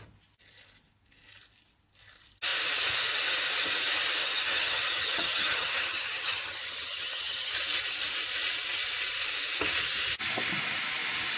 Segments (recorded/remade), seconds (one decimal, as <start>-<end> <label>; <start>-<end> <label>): 0.0-4.2 recorded; 4.2-7.5 remade; 7.5-11.4 recorded